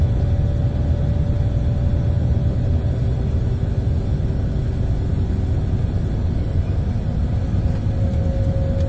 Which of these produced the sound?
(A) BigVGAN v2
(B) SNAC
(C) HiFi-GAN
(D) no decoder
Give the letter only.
D